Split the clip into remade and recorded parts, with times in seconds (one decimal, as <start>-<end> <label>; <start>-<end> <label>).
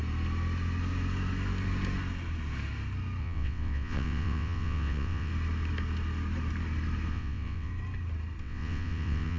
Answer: 0.0-3.2 recorded; 3.2-5.3 remade; 5.3-7.1 recorded; 7.1-7.7 remade; 7.7-8.4 recorded; 8.4-9.4 remade